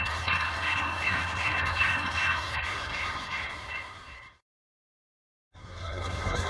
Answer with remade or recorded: remade